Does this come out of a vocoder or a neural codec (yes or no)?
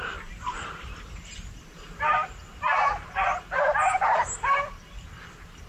no